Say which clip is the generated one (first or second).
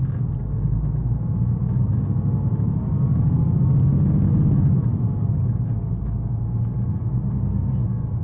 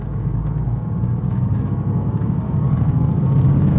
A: second